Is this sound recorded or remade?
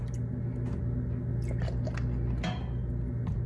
recorded